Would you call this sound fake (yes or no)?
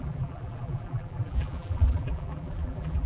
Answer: yes